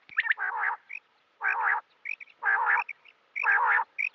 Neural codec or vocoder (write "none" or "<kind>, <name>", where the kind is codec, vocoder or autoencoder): none